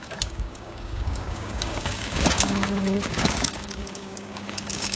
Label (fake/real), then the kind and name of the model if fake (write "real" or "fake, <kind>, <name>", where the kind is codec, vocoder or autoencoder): fake, codec, DAC